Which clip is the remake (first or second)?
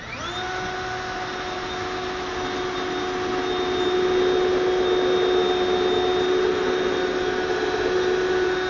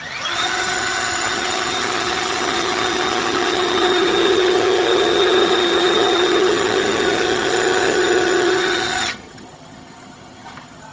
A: second